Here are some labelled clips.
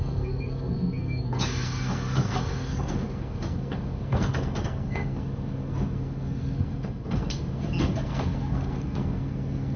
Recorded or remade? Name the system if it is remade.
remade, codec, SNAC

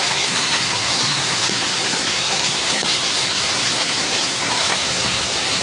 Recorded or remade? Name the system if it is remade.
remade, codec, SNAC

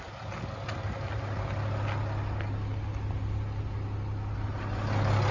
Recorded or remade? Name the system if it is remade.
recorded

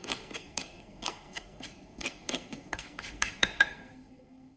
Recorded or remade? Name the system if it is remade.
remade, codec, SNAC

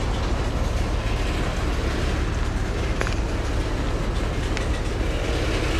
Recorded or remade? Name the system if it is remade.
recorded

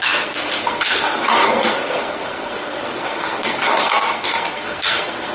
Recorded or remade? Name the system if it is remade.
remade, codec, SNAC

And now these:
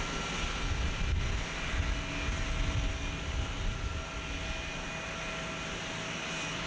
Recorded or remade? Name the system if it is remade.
recorded